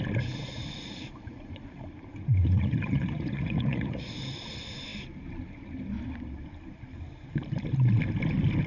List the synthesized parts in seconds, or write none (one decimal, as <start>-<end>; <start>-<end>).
2.4-4.1